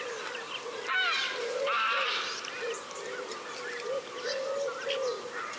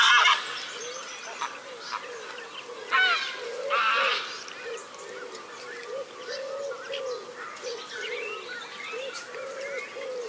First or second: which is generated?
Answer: first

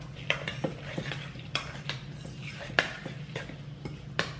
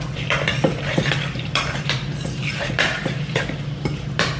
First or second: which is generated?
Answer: second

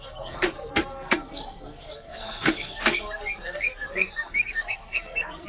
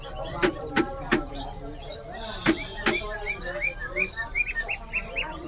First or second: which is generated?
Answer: first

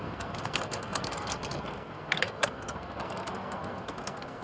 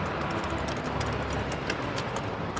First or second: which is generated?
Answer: first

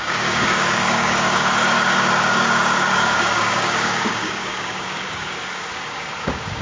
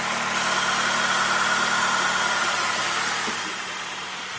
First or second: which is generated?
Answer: first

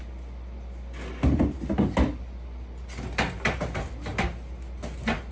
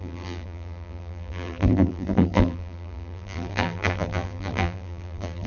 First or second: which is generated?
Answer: second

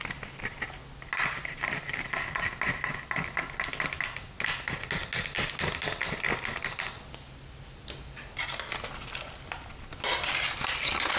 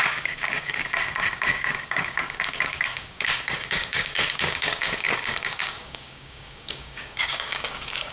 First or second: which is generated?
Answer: second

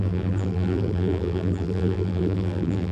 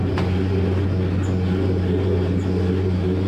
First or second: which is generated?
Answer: first